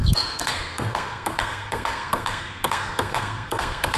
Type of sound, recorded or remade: remade